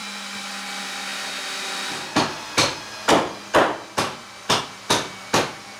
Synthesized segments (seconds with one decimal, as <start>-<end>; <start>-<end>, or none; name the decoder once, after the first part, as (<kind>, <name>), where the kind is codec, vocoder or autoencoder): none